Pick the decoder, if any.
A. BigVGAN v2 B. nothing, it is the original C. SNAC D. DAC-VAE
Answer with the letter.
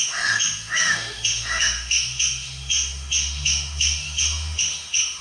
D